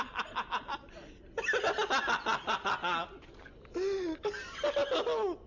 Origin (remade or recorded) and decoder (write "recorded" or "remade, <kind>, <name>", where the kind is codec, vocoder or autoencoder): recorded